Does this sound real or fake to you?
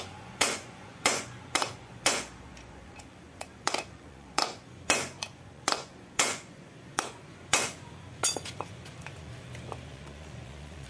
fake